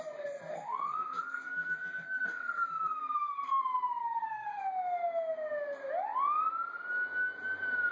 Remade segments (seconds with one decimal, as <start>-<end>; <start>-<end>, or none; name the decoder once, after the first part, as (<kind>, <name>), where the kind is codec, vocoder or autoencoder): 0.5-3.6 (codec, SNAC); 4.0-4.6